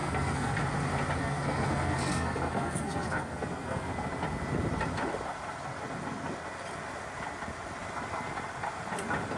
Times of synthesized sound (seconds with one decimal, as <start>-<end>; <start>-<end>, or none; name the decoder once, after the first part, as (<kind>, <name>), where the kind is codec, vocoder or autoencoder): 0.0-0.6 (codec, SNAC); 1.2-3.9